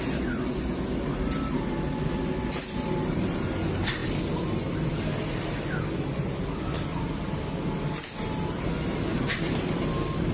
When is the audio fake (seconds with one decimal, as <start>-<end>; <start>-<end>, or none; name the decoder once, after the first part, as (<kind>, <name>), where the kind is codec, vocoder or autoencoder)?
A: none